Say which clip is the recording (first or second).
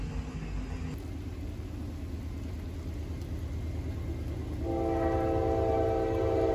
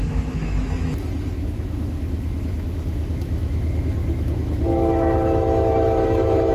first